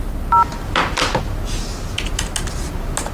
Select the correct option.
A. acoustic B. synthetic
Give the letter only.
A